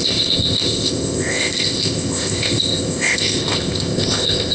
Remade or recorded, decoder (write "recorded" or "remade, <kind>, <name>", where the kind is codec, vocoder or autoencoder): remade, codec, ZipCodec